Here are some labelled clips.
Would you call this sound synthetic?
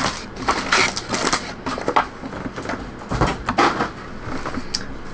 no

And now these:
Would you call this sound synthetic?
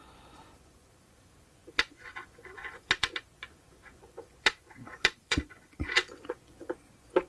yes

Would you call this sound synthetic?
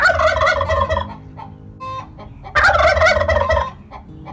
no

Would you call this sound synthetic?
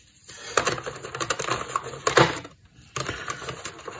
no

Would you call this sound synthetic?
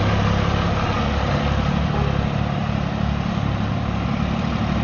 no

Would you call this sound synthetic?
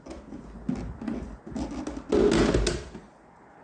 no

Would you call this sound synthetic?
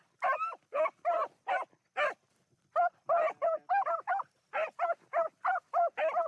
no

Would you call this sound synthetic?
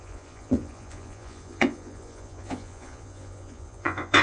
yes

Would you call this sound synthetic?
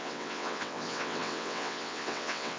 yes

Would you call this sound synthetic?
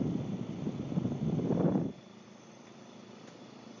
no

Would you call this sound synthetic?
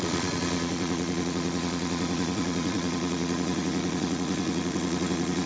yes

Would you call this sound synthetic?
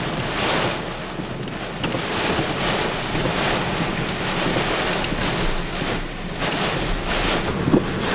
no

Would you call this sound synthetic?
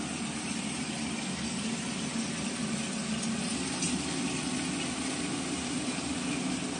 no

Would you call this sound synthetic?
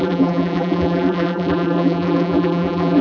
yes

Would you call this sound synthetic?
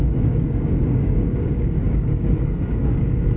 yes